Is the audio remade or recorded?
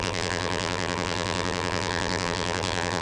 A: remade